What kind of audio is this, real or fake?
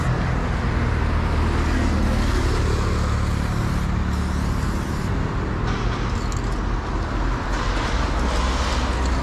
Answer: real